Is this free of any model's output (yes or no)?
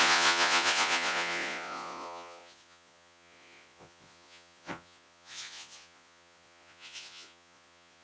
no